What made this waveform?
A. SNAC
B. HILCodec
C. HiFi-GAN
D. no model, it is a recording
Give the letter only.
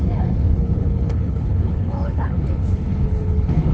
B